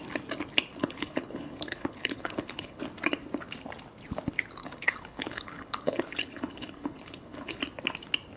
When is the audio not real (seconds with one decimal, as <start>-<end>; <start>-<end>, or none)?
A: 0.8-2.8; 4.6-7.6